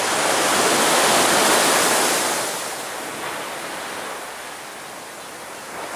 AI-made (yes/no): no